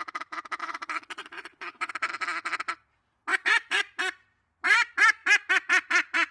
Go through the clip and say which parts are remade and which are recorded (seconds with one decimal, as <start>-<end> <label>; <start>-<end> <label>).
0.0-0.6 recorded; 0.6-1.9 remade; 1.9-3.3 recorded; 3.3-3.8 remade; 3.8-6.3 recorded